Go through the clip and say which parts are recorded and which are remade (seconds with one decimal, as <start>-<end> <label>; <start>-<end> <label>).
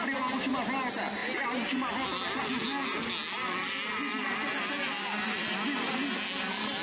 0.0-6.8 recorded